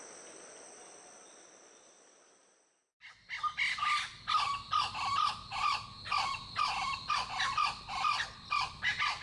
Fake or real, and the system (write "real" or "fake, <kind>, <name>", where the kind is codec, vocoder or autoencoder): real